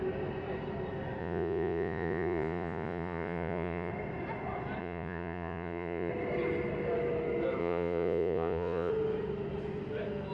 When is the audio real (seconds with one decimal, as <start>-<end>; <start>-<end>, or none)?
0.0-1.2; 3.9-4.8; 6.1-7.6; 8.9-10.3